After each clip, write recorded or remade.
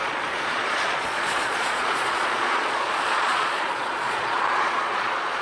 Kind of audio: remade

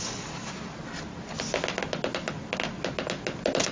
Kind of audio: recorded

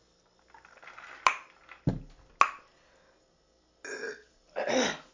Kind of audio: recorded